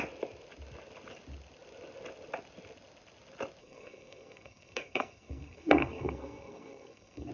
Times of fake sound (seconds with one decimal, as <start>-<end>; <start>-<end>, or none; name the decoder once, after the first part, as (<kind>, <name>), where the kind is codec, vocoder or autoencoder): 3.6-7.3 (codec, SNAC)